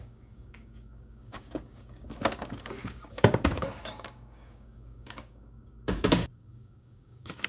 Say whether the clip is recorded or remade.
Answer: remade